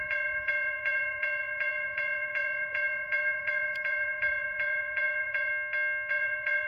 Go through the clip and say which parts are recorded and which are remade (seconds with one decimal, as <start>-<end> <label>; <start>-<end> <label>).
0.0-5.5 remade; 5.5-6.1 recorded; 6.1-6.7 remade

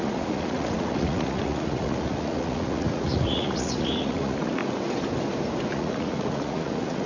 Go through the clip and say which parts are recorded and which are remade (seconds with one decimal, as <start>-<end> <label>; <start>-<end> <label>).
0.0-4.6 remade; 4.6-5.7 recorded; 5.7-7.1 remade